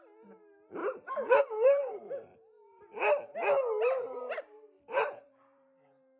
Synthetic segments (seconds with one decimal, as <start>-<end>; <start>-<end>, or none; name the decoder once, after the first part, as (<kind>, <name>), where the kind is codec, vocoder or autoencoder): 0.0-0.8 (vocoder, BigVGAN v2); 1.4-2.3; 4.4-6.2